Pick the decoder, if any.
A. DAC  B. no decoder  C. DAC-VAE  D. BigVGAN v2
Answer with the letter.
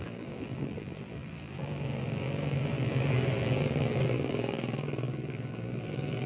D